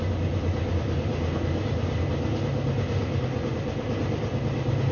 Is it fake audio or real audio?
real